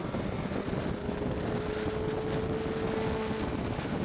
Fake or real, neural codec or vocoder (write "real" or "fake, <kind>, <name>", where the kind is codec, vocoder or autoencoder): real